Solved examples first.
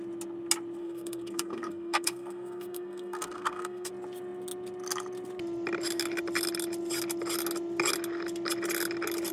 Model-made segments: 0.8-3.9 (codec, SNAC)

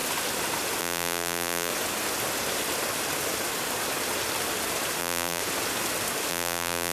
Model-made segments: 0.8-1.7 (vocoder, BigVGAN v2); 5.0-5.4; 6.3-6.9

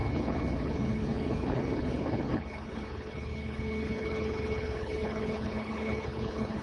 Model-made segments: 0.0-6.6 (codec, HILCodec)

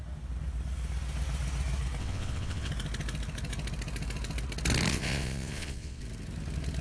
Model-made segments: 2.0-2.7 (vocoder, WaveNeXt); 4.9-6.0

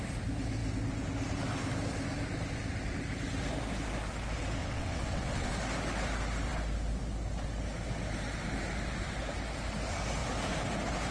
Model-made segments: 4.6-5.5 (vocoder, WaveNeXt)

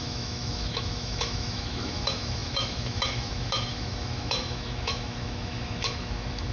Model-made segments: 0.0-6.5 (autoencoder, DAC-VAE)